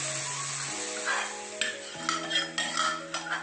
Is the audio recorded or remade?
recorded